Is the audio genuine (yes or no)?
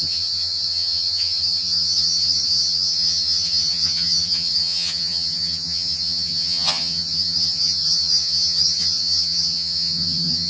no